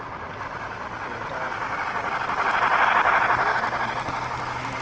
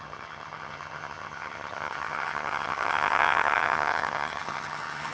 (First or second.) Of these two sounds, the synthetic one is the second